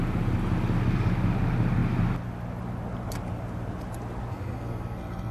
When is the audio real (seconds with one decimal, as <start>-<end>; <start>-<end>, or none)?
0.0-4.3